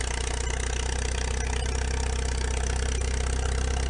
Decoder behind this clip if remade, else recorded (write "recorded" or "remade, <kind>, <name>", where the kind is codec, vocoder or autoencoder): recorded